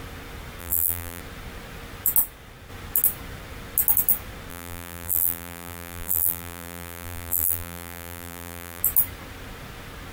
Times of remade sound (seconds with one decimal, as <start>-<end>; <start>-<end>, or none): 0.6-1.2; 4.5-8.8